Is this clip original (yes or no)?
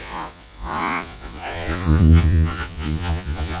no